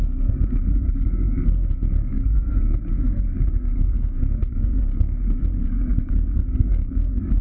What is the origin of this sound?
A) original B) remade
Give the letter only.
B